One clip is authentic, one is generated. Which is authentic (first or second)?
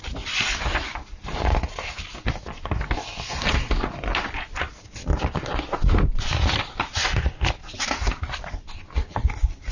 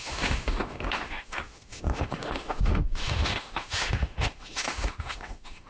first